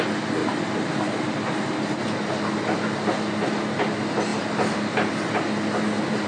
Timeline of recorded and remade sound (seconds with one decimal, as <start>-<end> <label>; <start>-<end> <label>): 0.0-6.3 recorded